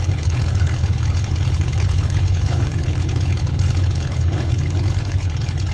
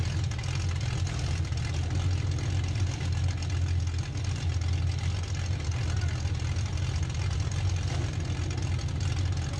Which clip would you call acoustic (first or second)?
second